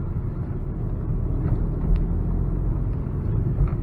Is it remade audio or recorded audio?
recorded